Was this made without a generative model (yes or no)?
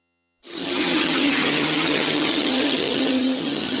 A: no